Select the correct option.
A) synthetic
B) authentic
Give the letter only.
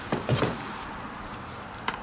A